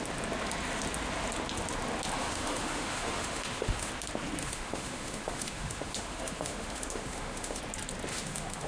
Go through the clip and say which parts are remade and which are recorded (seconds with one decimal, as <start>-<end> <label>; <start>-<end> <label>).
0.0-2.2 recorded; 2.2-3.9 remade; 3.9-4.4 recorded; 4.4-7.6 remade; 7.6-8.1 recorded; 8.1-8.7 remade